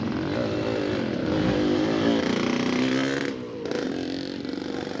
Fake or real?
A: real